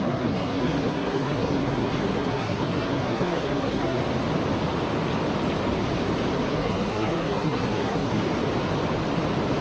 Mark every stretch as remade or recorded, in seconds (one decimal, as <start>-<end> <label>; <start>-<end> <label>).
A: 0.0-4.0 remade; 4.0-6.5 recorded; 6.5-8.2 remade; 8.2-9.6 recorded